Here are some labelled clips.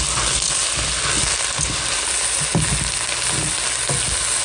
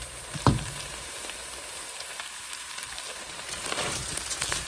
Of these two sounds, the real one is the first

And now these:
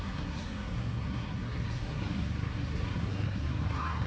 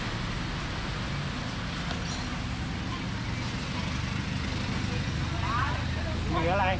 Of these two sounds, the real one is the second